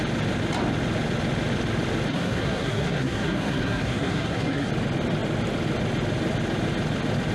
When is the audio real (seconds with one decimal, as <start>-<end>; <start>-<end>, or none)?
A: 0.0-2.1; 4.7-7.3

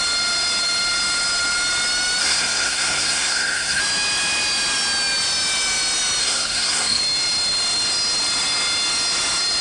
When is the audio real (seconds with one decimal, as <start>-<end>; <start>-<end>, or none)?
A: 0.0-2.2; 3.8-6.2; 7.0-9.6

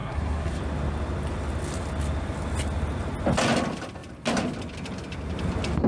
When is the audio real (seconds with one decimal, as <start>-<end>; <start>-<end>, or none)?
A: 0.6-5.9

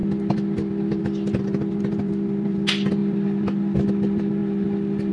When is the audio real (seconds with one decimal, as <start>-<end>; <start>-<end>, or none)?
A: 0.0-5.1

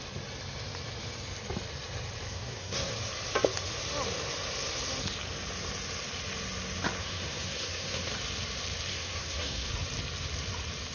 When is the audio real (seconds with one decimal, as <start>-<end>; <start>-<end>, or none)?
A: 0.0-2.3; 2.9-7.0; 8.1-8.9; 9.7-10.9